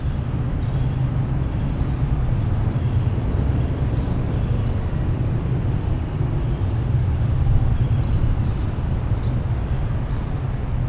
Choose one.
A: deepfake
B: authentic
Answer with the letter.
B